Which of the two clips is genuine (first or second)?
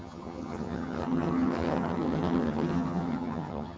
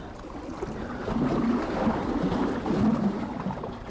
second